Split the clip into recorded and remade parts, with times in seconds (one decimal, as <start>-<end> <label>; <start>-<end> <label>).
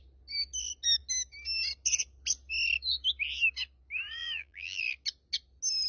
0.0-4.2 recorded; 4.2-4.8 remade; 4.8-5.9 recorded